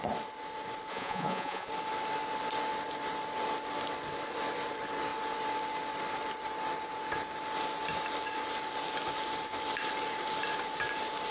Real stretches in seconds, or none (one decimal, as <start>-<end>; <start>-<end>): 0.0-0.9; 1.7-11.3